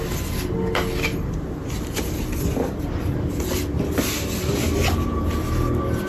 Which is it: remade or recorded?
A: recorded